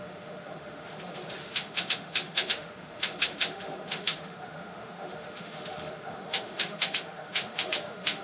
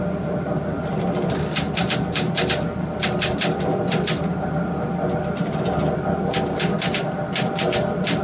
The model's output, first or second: first